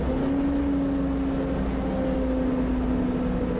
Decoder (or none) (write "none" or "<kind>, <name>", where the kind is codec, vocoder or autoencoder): none